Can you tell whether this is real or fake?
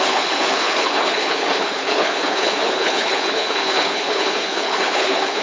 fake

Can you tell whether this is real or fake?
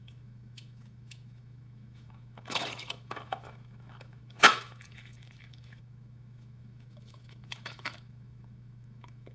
fake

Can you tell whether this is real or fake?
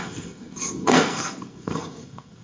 fake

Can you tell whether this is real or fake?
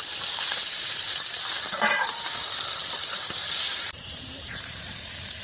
fake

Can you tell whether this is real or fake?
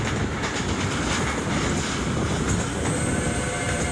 real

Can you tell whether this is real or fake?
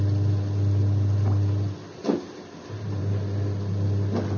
real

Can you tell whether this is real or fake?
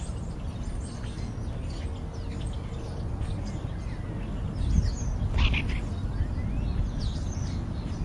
real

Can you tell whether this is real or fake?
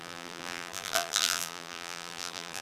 fake